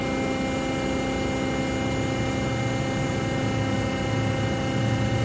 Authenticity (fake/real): real